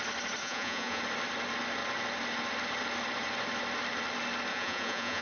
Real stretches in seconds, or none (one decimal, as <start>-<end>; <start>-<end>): 0.0-0.4; 1.0-4.5